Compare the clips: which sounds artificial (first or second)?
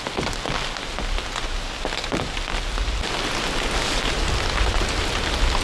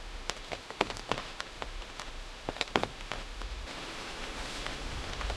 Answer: second